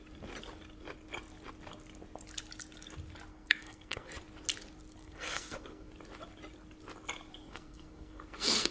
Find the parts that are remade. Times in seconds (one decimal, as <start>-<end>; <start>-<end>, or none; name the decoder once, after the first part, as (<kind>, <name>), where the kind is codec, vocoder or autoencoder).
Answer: 3.3-4.1 (codec, SNAC); 5.0-5.9; 7.4-8.7